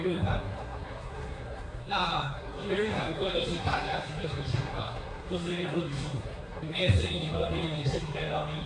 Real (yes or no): no